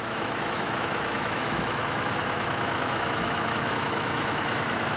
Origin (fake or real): fake